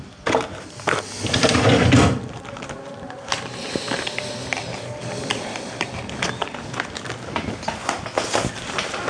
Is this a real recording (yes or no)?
yes